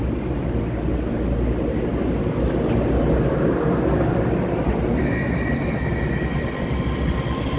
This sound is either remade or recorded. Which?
recorded